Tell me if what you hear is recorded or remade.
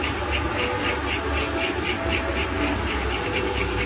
recorded